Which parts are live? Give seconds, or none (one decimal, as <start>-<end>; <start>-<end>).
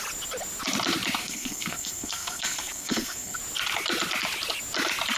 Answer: 0.0-1.2; 3.4-5.2